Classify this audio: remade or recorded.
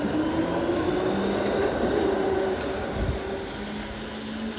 recorded